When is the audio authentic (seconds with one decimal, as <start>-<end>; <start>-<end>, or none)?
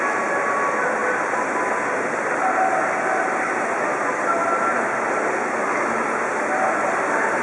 0.0-7.4